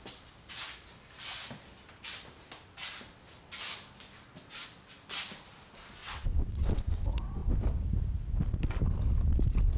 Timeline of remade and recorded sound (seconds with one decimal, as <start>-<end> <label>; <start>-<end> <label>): 0.0-6.0 recorded; 6.0-7.0 remade; 7.0-9.8 recorded